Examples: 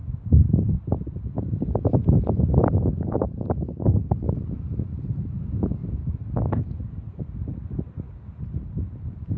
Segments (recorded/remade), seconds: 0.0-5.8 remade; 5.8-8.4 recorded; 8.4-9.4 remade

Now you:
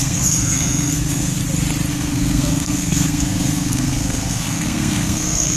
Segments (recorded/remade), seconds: 0.0-1.4 remade; 1.4-1.9 recorded; 1.9-5.6 remade